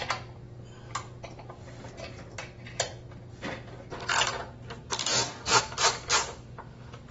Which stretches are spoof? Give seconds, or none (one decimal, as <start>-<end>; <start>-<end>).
5.0-5.6